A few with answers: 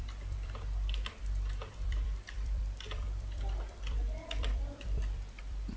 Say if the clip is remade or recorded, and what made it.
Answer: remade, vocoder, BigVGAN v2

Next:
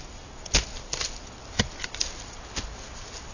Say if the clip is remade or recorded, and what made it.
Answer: recorded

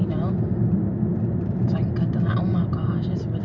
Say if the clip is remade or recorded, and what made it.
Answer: recorded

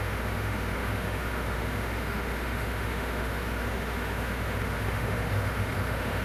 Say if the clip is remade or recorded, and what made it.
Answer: remade, autoencoder, DAC-VAE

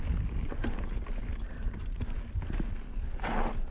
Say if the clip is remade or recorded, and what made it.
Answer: recorded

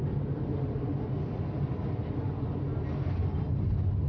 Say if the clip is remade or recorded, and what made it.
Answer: recorded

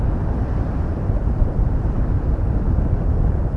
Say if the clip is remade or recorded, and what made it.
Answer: recorded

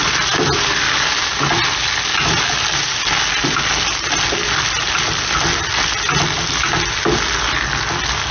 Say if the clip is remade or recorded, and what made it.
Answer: recorded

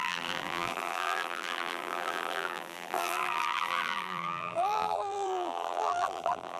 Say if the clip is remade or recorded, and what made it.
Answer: remade, vocoder, BigVGAN v2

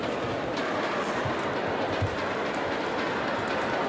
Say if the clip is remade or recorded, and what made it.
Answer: recorded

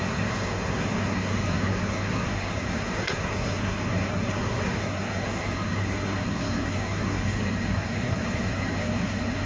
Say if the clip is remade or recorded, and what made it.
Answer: remade, codec, SNAC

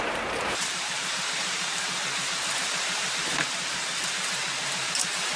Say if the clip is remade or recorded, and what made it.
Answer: remade, vocoder, BigVGAN v2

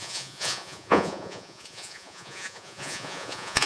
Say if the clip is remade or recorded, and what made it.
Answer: remade, vocoder, Vocos